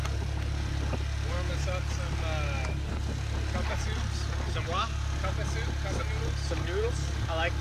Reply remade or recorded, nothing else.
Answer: recorded